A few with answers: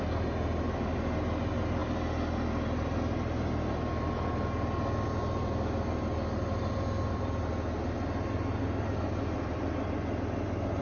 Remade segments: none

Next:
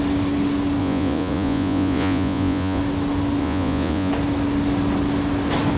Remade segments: 0.8-2.8 (vocoder, Vocos); 3.4-4.1